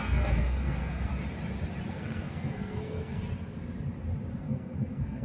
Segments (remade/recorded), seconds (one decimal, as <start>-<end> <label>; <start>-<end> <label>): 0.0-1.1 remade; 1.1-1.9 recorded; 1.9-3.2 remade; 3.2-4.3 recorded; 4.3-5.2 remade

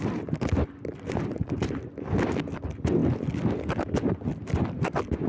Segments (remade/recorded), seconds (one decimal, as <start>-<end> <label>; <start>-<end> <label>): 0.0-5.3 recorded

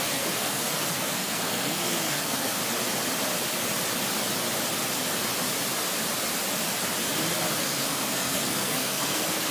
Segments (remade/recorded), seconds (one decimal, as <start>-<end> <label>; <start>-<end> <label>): 0.0-2.6 remade; 2.6-7.6 recorded; 7.6-9.5 remade

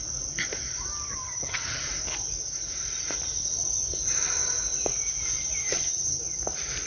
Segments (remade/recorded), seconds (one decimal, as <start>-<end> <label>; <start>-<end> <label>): 0.0-1.2 recorded; 1.2-1.8 remade; 1.8-5.6 recorded; 5.6-6.2 remade; 6.2-6.9 recorded